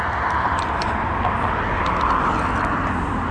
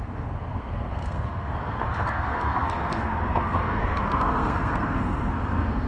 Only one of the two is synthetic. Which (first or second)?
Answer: second